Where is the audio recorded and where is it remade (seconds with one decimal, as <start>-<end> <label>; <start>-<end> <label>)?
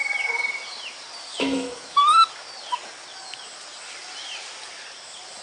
0.0-1.3 recorded; 1.3-2.0 remade; 2.0-5.4 recorded